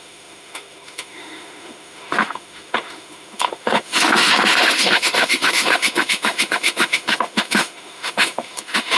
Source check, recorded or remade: remade